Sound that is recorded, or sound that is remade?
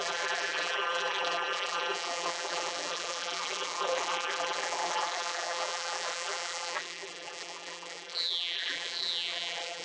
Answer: remade